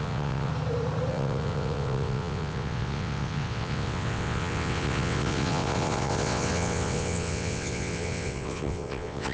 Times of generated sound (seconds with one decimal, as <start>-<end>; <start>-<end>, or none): 0.0-0.5; 1.1-9.3